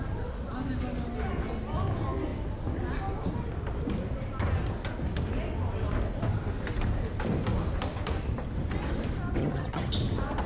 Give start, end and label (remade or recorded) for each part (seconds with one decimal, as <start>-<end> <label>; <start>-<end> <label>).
0.0-9.4 recorded; 9.4-9.9 remade; 9.9-10.5 recorded